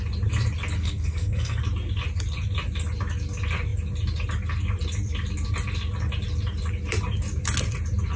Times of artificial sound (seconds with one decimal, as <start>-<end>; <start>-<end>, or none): 0.8-1.6